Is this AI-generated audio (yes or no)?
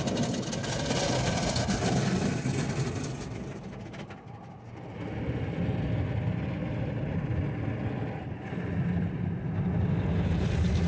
no